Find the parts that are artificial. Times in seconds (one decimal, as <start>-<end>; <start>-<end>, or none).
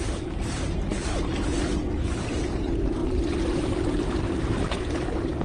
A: none